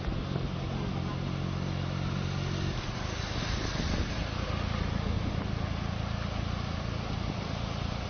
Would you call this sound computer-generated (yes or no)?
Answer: no